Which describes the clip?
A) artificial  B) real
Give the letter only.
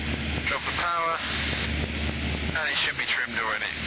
B